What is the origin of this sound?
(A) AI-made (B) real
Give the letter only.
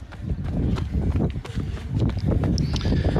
B